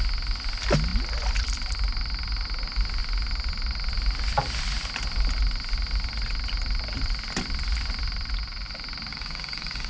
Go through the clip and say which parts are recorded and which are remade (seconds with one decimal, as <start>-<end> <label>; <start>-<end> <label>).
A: 0.0-9.1 recorded; 9.1-9.9 remade